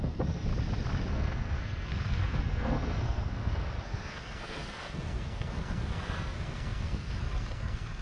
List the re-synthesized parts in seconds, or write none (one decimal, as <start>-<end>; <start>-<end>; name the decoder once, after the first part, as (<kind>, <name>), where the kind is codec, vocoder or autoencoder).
0.0-0.5 (codec, SNAC); 1.1-8.0